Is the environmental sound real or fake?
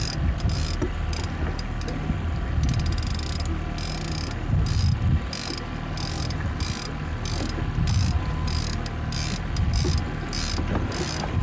real